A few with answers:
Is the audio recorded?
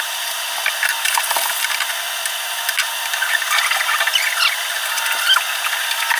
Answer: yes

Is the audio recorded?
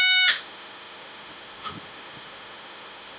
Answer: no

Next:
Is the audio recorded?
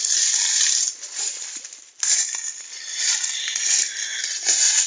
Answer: yes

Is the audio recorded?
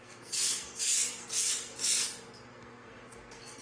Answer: no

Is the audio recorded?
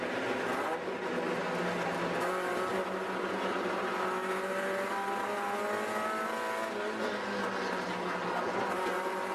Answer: yes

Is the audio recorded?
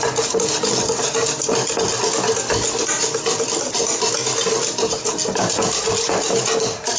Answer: yes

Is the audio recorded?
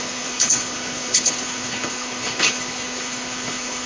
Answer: no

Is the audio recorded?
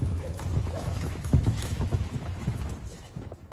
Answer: no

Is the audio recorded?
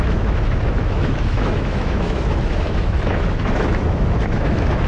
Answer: no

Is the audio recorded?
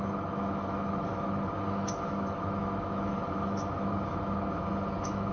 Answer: no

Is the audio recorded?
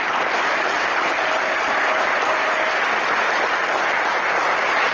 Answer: yes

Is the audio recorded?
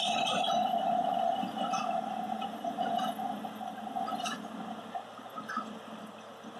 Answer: no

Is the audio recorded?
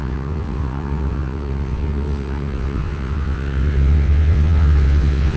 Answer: no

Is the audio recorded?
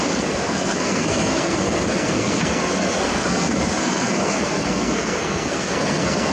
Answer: no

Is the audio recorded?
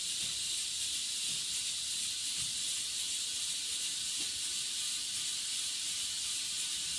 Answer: yes